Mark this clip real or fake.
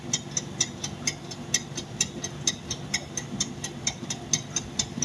real